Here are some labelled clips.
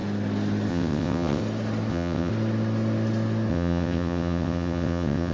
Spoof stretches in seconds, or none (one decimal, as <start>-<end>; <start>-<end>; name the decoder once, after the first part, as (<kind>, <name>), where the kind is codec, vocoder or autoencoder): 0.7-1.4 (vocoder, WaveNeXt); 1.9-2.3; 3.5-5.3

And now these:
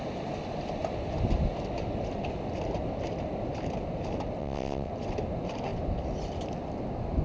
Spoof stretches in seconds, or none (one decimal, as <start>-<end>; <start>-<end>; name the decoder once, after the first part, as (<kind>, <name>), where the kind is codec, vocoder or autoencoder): 4.4-4.9 (vocoder, WaveNeXt)

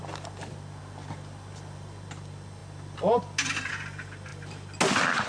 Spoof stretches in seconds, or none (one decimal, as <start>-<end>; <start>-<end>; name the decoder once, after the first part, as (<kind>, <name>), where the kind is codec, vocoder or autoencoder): none

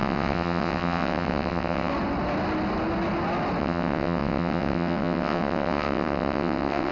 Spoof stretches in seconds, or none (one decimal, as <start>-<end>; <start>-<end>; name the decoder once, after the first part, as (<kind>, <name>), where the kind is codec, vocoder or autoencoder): 0.0-1.9 (vocoder, WaveNeXt); 3.6-6.9